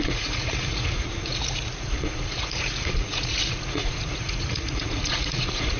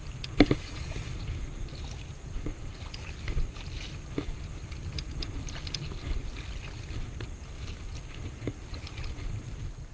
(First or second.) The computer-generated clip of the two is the first